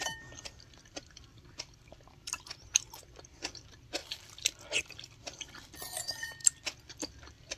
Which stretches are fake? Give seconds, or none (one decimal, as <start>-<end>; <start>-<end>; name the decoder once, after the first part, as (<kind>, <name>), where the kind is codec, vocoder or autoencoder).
none